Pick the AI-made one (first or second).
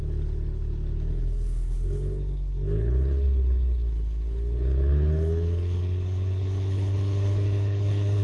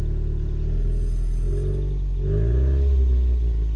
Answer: first